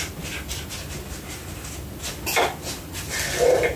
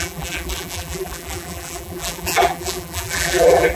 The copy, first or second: second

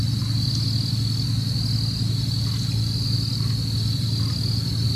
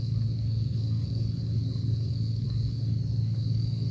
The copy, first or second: second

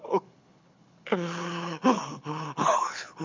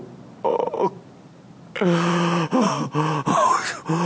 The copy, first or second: first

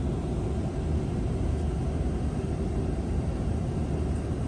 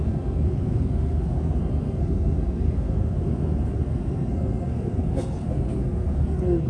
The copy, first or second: second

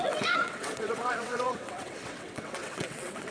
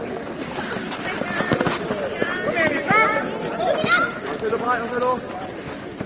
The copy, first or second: first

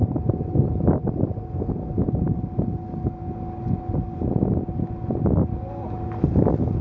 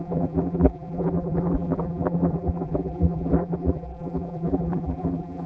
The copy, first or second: second